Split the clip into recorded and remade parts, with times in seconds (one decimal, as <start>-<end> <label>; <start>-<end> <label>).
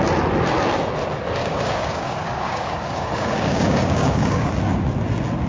0.0-1.4 recorded; 1.4-4.5 remade; 4.5-5.5 recorded